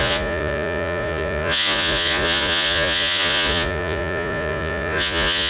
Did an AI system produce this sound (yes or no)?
yes